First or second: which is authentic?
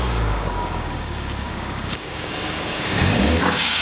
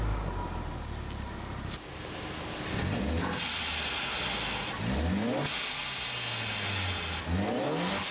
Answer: second